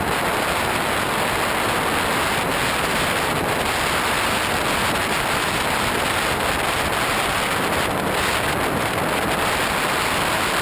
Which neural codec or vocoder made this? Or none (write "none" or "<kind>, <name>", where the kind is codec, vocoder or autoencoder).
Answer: none